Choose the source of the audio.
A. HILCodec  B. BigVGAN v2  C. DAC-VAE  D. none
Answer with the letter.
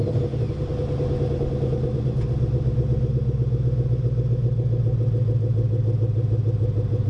D